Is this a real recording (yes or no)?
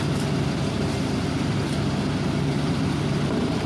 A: yes